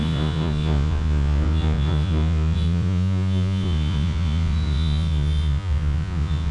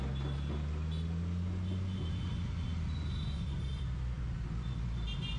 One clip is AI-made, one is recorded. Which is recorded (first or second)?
second